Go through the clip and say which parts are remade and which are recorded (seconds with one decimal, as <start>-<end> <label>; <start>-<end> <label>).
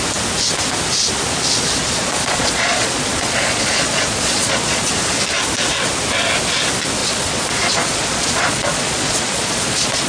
0.0-1.8 recorded; 1.8-4.9 remade; 4.9-7.0 recorded; 7.0-10.1 remade